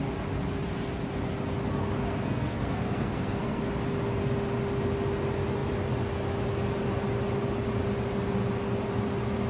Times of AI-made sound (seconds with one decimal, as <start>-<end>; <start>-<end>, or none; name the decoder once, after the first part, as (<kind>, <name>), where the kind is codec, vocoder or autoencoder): 1.7-3.6 (codec, SNAC)